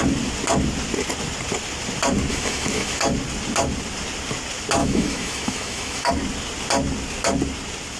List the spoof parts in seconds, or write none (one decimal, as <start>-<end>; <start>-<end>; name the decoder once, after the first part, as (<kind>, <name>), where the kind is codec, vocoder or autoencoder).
2.3-3.0 (autoencoder, DAC-VAE); 4.8-6.1